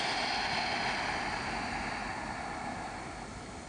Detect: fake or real real